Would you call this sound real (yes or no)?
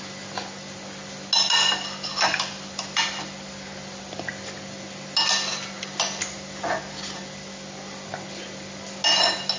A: yes